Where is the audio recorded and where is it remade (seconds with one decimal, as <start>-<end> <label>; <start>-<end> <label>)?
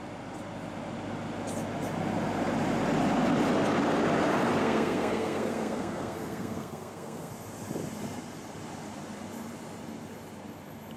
0.0-4.6 recorded; 4.6-7.3 remade; 7.3-11.0 recorded